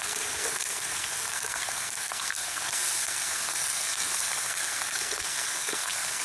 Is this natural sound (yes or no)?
no